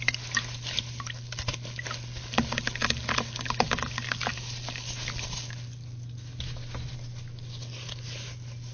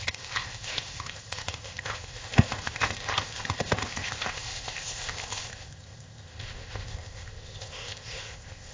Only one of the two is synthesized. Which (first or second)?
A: second